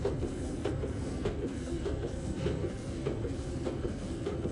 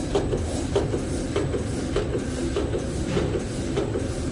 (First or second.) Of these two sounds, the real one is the second